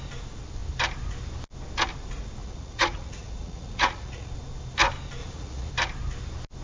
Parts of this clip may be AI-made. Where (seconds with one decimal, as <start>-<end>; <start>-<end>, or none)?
2.4-4.3; 5.2-5.7